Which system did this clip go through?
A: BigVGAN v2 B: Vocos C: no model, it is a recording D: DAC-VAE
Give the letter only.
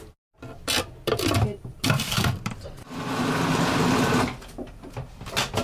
C